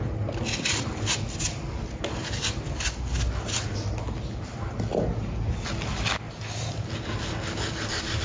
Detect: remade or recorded recorded